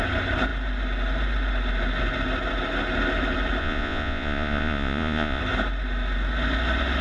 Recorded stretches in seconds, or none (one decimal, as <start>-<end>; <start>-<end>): 0.0-3.6; 5.4-7.0